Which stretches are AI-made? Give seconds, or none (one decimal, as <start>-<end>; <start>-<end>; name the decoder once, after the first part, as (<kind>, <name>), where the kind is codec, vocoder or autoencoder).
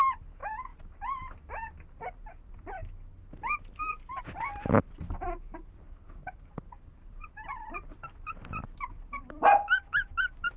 none